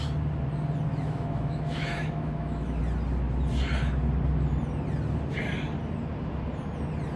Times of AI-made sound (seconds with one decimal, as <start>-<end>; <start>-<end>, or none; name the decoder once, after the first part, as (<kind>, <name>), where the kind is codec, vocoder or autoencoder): 0.9-2.8 (autoencoder, DAC-VAE)